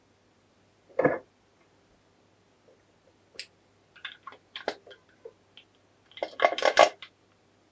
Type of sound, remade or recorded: recorded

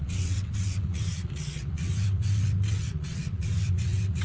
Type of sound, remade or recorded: remade